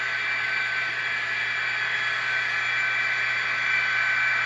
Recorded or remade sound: recorded